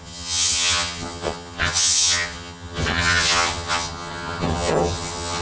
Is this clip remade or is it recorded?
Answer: remade